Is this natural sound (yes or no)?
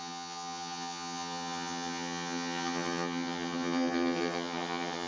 no